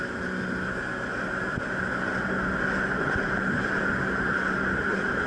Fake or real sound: real